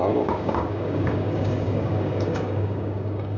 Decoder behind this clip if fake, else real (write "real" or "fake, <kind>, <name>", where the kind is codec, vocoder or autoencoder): fake, codec, DAC